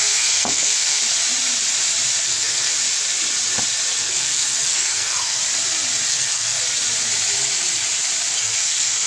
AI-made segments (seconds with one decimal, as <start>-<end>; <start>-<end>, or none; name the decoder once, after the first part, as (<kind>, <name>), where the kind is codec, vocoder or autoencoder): 0.0-1.0 (codec, SNAC); 2.2-2.7; 4.0-5.4; 6.1-6.6; 8.4-9.1